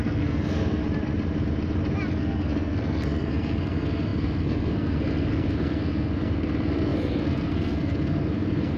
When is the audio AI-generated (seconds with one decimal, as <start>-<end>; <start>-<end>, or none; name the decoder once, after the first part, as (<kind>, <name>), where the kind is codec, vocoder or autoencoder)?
0.0-0.8 (codec, SNAC); 2.1-8.8